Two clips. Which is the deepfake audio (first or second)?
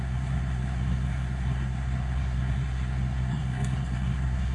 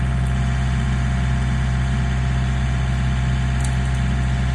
first